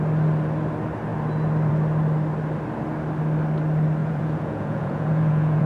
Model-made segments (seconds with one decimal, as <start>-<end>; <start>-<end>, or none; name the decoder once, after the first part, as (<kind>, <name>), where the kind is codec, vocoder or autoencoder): 4.0-5.7 (vocoder, Vocos)